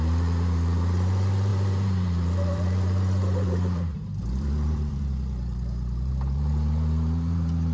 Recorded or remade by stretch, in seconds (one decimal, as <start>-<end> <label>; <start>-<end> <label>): 0.0-7.7 remade